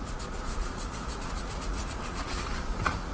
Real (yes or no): no